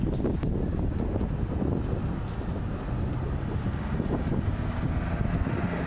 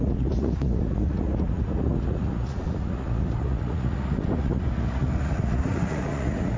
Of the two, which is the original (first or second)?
first